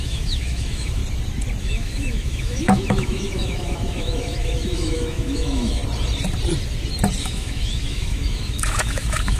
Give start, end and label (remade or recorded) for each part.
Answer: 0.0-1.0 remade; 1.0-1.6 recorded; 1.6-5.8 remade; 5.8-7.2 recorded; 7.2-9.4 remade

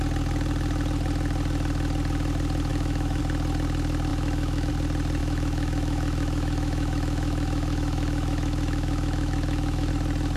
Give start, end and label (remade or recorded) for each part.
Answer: 0.0-2.7 recorded; 2.7-3.2 remade; 3.2-4.1 recorded; 4.1-4.7 remade; 4.7-5.2 recorded; 5.2-9.9 remade; 9.9-10.4 recorded

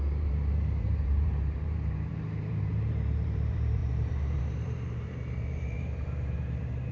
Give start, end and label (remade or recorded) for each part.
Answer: 0.0-6.9 remade

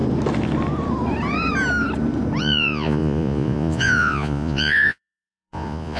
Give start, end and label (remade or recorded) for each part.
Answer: 0.0-2.4 recorded; 2.4-6.0 remade

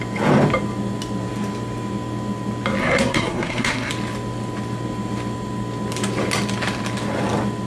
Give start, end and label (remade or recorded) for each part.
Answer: 0.0-2.8 recorded; 2.8-3.9 remade; 3.9-7.7 recorded

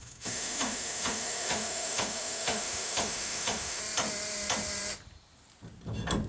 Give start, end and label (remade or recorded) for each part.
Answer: 0.0-3.8 remade; 3.8-6.3 recorded

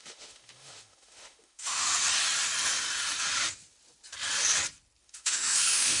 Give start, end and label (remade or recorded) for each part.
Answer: 0.0-1.8 remade; 1.8-5.0 recorded; 5.0-6.0 remade

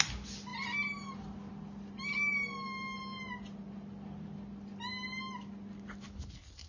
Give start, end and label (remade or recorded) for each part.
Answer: 0.0-6.7 recorded